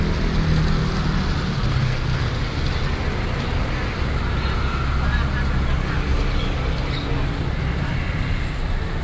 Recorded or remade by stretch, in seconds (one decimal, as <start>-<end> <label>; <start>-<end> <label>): 0.0-1.6 recorded; 1.6-2.3 remade; 2.3-9.0 recorded